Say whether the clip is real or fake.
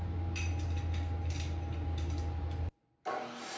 real